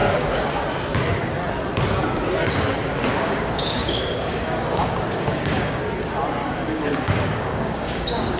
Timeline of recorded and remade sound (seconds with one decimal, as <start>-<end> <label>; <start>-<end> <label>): 0.0-0.5 remade; 0.5-3.1 recorded; 3.1-5.8 remade; 5.8-6.4 recorded; 6.4-8.4 remade